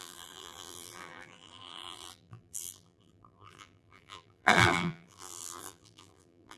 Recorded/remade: remade